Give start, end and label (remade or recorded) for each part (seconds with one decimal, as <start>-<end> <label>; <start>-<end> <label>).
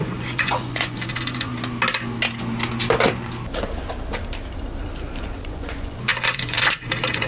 0.0-1.5 remade; 1.5-5.2 recorded; 5.2-7.3 remade